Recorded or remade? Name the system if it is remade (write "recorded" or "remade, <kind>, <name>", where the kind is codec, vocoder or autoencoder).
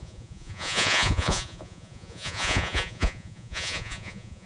remade, vocoder, Vocos